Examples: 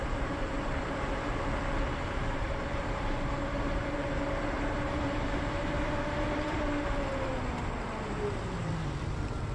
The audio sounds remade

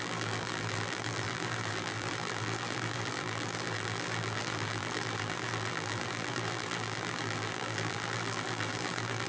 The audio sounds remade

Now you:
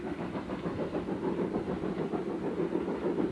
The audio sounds recorded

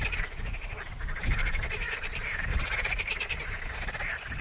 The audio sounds remade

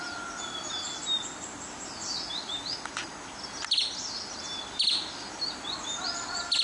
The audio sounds recorded